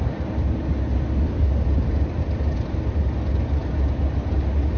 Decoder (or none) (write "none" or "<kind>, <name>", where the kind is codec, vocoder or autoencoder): none